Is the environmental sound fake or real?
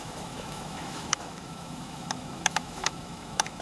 fake